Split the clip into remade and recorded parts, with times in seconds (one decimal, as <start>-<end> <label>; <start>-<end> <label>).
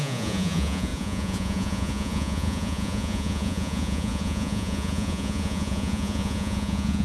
0.0-7.0 remade